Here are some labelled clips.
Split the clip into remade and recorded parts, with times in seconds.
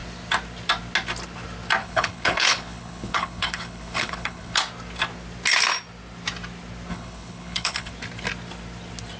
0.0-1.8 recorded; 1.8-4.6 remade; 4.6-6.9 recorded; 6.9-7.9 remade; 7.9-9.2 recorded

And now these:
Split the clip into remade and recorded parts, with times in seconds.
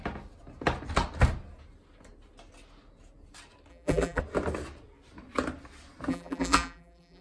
0.0-3.7 recorded; 3.7-4.2 remade; 4.2-6.1 recorded; 6.1-7.2 remade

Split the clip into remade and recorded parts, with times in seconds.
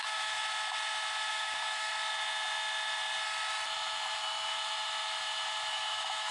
0.0-0.4 remade; 0.4-1.3 recorded; 1.3-1.9 remade; 1.9-5.7 recorded; 5.7-6.3 remade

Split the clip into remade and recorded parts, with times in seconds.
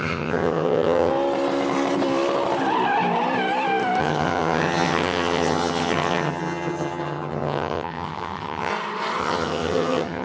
0.0-1.1 remade; 1.1-4.0 recorded; 4.0-8.7 remade; 8.7-9.2 recorded; 9.2-10.2 remade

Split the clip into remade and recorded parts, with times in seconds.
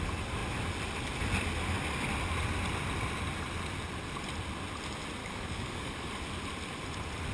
0.0-5.2 recorded; 5.2-6.1 remade; 6.1-7.3 recorded